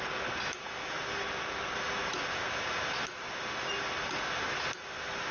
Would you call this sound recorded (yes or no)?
yes